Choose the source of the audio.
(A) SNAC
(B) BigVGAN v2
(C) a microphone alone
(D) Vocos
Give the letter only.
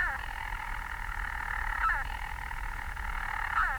D